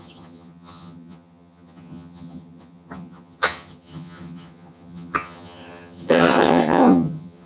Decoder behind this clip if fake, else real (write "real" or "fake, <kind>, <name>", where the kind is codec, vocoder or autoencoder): fake, vocoder, HiFi-GAN